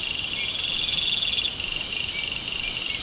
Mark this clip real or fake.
real